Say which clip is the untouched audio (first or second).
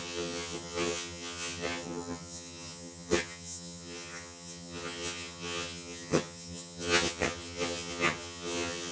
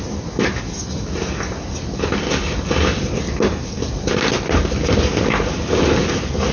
second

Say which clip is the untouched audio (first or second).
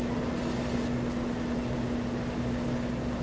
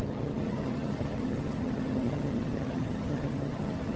first